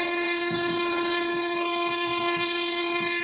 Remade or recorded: remade